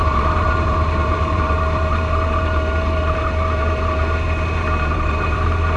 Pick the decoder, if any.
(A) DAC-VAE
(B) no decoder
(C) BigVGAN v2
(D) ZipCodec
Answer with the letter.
C